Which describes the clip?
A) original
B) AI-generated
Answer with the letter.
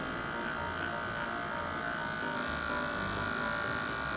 A